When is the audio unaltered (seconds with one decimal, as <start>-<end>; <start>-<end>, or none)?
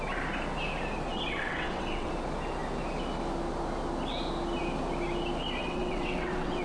0.0-1.1; 2.1-5.6